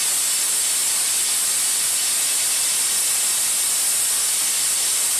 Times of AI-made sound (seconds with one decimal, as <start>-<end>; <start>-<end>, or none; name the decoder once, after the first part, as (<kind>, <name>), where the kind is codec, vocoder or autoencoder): none